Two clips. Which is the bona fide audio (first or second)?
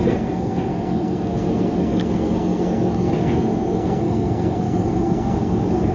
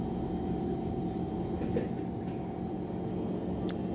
second